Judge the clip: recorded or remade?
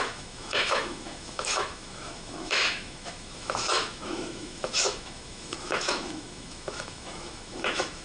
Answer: remade